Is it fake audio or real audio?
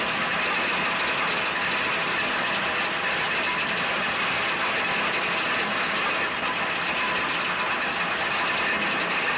real